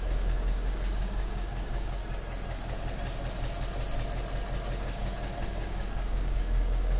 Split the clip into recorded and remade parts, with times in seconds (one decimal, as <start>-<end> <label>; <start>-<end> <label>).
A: 0.0-2.0 remade; 2.0-4.8 recorded; 4.8-7.0 remade